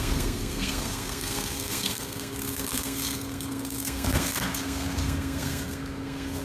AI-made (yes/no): yes